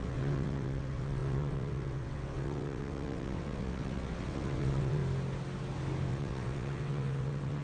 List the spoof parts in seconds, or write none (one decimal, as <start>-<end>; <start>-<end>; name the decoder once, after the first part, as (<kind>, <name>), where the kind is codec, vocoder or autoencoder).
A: 0.0-5.0 (vocoder, WaveNeXt); 6.1-7.6